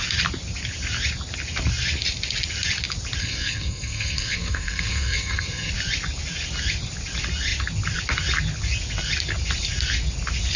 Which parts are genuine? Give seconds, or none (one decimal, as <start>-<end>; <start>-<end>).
0.0-3.2; 5.7-10.6